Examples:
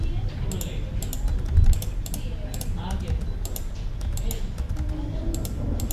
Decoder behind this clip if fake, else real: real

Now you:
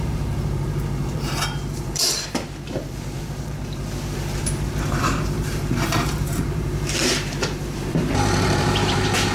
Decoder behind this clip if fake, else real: fake, vocoder, BigVGAN v2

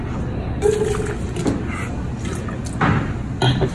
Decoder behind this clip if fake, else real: real